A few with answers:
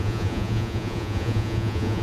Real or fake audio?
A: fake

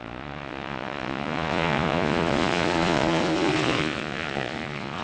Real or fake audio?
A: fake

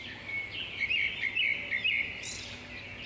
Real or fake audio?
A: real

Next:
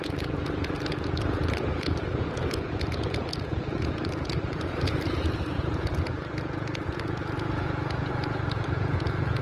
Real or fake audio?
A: fake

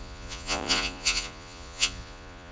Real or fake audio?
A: fake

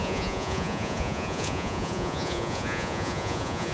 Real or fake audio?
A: fake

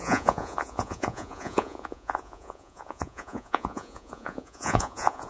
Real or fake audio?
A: fake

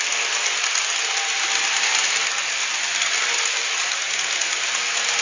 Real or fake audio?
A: real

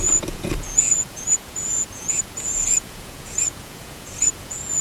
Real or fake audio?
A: fake